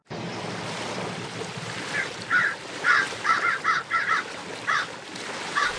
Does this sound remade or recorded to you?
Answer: recorded